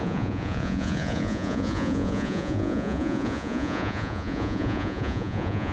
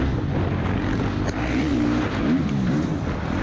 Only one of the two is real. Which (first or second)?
second